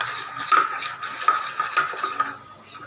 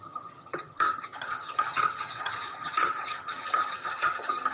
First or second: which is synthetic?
second